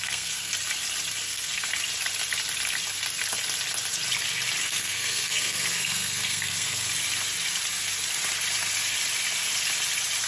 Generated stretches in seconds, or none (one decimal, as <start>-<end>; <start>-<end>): 0.0-0.5; 1.2-1.7; 4.6-6.9